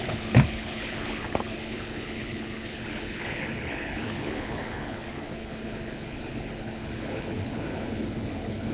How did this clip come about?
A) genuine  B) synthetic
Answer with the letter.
B